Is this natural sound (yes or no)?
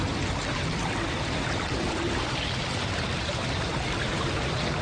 yes